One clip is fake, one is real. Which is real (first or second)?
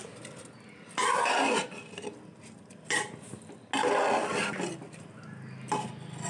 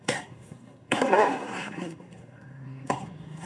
first